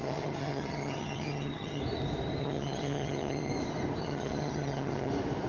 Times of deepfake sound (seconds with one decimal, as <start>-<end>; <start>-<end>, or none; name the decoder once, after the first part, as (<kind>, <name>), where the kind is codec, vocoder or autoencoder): 0.0-1.8 (vocoder, HiFi-GAN); 2.4-3.5; 4.0-5.1